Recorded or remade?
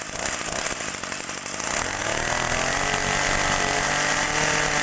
recorded